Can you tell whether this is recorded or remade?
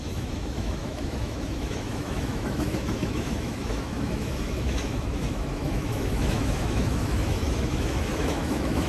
remade